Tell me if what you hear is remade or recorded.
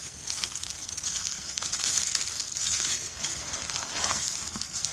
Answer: remade